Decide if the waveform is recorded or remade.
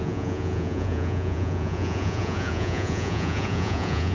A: remade